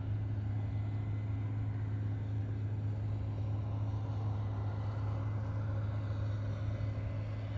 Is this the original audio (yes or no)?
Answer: yes